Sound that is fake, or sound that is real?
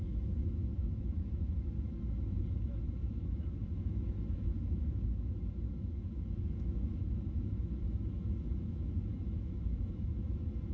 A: fake